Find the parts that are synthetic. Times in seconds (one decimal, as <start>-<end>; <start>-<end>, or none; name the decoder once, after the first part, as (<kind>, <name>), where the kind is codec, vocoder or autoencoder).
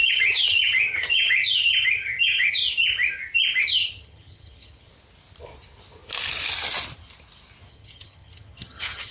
0.0-2.6 (vocoder, HiFi-GAN); 3.6-4.9; 7.7-9.1